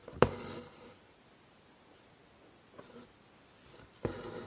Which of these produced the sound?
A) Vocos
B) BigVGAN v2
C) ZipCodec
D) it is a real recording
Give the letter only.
D